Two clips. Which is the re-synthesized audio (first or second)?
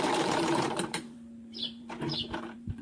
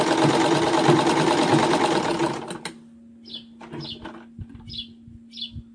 first